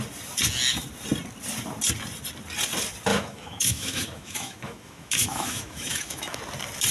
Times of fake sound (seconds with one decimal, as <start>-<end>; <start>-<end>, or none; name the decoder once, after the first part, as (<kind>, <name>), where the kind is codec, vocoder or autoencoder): 3.1-6.4 (autoencoder, DAC-VAE)